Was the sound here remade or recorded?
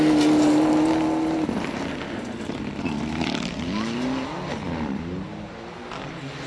recorded